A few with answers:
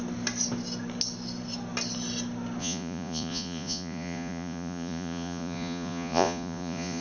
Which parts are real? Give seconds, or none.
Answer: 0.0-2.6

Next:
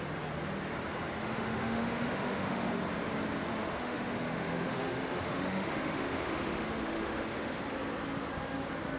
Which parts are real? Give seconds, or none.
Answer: 0.0-1.2; 2.7-3.5; 7.6-9.0

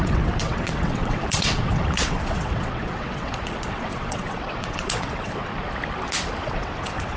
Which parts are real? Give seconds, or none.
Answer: 5.5-6.4

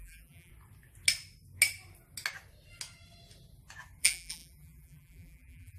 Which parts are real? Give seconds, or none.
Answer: 0.5-4.0

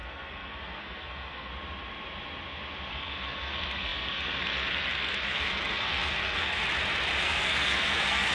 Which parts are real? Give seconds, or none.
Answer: 1.5-2.9; 6.6-7.2

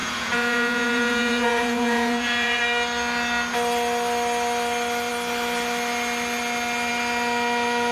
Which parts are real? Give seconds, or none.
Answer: 2.6-7.9

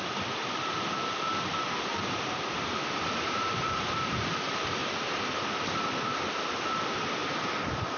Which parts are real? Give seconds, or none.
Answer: 0.0-1.5; 4.3-4.8; 5.7-7.2

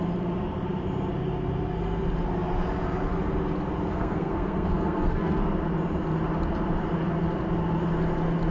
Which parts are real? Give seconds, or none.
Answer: 0.0-3.9; 5.4-8.5